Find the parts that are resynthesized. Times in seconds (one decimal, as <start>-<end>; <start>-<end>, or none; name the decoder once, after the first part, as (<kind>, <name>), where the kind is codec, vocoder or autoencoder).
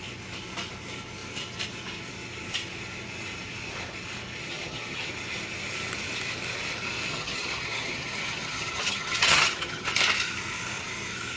4.4-5.1 (vocoder, HiFi-GAN); 7.1-9.9